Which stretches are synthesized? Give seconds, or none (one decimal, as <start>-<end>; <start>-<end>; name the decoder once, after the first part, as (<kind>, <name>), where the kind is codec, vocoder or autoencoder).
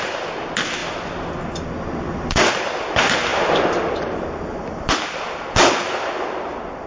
0.8-2.5 (vocoder, BigVGAN v2); 3.3-5.0